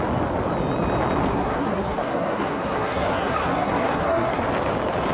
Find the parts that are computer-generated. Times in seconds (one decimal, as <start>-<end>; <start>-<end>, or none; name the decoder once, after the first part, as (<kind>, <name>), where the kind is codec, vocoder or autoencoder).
1.3-4.4 (codec, SNAC)